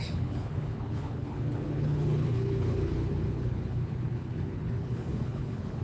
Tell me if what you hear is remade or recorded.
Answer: remade